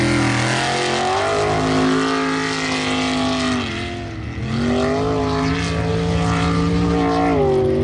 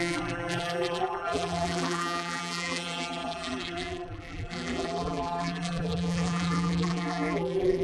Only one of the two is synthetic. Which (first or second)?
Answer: second